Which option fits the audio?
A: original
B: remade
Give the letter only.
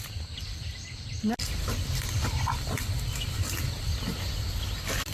A